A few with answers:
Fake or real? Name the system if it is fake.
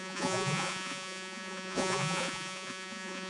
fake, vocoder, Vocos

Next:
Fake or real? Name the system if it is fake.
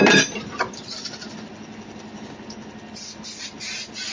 real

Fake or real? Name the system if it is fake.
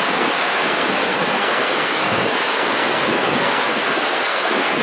fake, codec, SNAC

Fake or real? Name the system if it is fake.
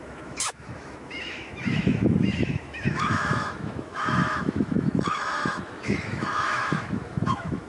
fake, autoencoder, DAC-VAE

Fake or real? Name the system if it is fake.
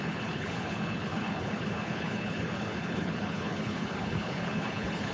fake, codec, HILCodec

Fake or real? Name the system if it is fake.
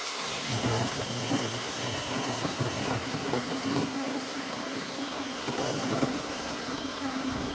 fake, codec, SNAC